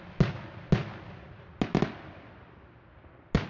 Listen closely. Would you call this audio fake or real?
real